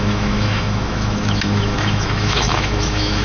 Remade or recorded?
remade